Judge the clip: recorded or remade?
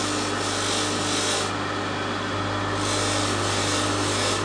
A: recorded